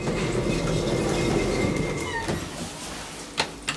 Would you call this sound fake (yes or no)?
no